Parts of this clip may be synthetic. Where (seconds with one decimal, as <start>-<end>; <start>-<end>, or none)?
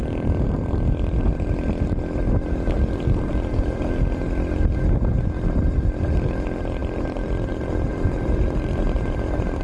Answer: none